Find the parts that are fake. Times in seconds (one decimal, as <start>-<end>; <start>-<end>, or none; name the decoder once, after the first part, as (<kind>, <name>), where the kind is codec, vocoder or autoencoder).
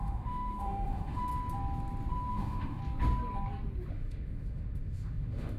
0.0-1.3 (autoencoder, DAC-VAE); 2.3-2.8; 3.9-5.6